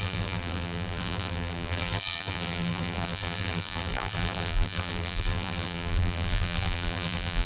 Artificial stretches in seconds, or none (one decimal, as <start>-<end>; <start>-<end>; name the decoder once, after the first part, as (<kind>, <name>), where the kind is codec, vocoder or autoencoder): 0.0-7.5 (vocoder, BigVGAN v2)